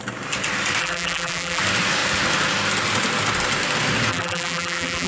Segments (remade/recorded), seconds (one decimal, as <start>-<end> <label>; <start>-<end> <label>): 0.0-0.8 recorded; 0.8-1.6 remade; 1.6-4.1 recorded; 4.1-5.1 remade